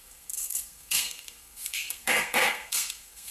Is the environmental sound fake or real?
fake